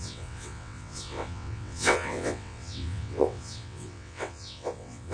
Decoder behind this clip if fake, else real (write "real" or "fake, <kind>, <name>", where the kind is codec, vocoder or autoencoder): fake, vocoder, WaveNeXt